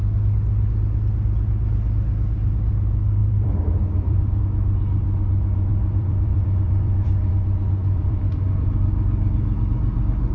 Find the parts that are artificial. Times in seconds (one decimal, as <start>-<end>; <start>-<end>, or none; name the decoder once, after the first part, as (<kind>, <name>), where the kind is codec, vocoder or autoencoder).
3.2-4.4 (vocoder, BigVGAN v2); 5.7-7.3; 7.8-9.6